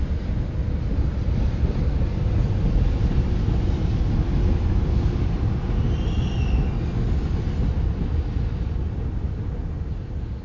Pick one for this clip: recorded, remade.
recorded